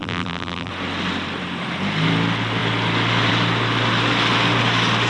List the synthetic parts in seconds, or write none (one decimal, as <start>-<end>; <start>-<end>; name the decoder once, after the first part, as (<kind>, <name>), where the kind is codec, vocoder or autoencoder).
0.0-0.7 (vocoder, BigVGAN v2)